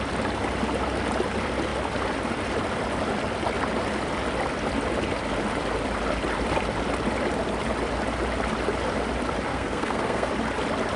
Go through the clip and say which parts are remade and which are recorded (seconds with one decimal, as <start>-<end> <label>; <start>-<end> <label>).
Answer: 0.0-9.5 recorded; 9.5-10.3 remade; 10.3-11.0 recorded